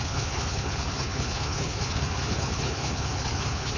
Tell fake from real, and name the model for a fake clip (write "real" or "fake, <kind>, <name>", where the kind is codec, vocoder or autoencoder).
fake, codec, HILCodec